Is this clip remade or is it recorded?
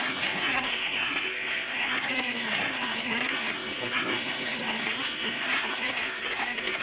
remade